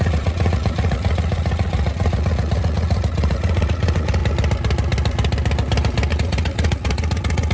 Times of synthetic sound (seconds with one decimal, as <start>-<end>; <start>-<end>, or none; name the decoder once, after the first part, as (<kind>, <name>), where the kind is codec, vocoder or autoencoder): 0.0-4.2 (vocoder, Vocos); 6.1-7.5